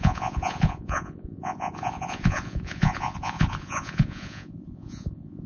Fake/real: fake